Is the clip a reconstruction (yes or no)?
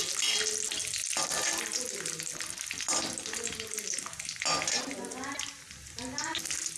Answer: no